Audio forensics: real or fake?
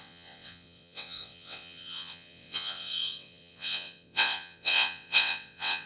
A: fake